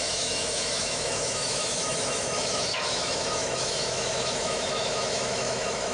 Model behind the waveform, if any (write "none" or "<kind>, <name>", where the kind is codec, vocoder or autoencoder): autoencoder, DAC-VAE